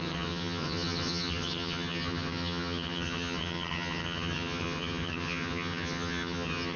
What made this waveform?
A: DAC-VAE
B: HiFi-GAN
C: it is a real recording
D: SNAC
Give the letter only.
B